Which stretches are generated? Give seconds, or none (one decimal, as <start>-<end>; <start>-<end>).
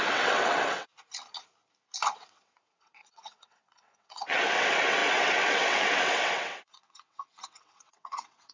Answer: 0.0-0.9; 2.1-8.5